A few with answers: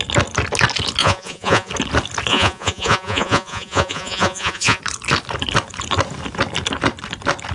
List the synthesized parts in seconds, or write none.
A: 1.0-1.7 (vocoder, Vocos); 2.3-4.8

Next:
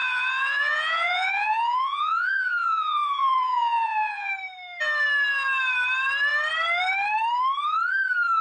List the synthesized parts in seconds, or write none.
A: 0.0-4.3 (vocoder, Vocos)

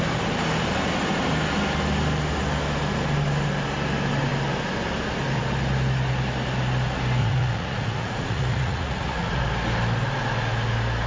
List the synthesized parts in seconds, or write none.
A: 7.2-9.4 (vocoder, Vocos)